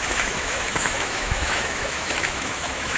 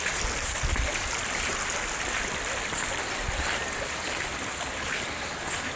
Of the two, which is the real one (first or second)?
second